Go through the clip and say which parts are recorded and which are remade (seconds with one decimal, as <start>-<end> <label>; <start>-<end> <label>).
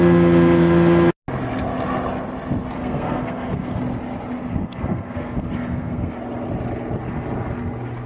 0.0-2.7 recorded; 2.7-3.8 remade; 3.8-4.5 recorded; 4.5-6.1 remade; 6.1-8.1 recorded